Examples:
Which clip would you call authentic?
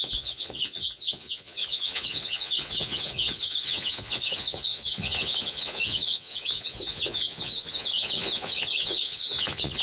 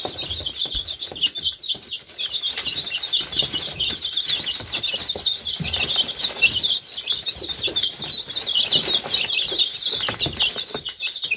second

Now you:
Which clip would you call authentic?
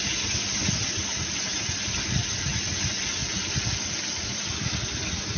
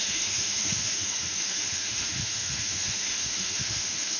first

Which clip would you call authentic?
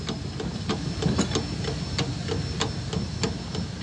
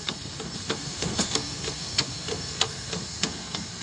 first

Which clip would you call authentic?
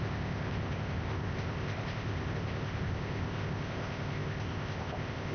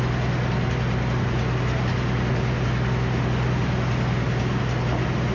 second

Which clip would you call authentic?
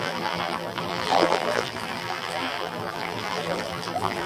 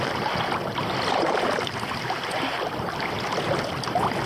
second